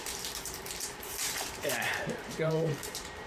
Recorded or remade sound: remade